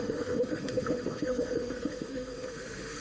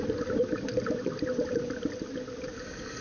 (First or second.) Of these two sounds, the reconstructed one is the first